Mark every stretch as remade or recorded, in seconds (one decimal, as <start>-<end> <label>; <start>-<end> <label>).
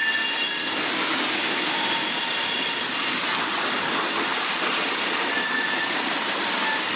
0.0-2.2 recorded; 2.2-7.0 remade